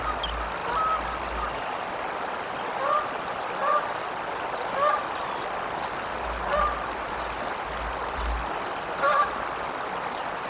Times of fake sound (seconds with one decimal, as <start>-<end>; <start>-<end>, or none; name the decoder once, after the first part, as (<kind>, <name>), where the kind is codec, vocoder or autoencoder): none